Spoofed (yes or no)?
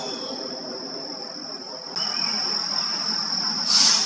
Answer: no